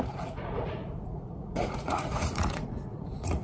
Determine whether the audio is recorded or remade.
remade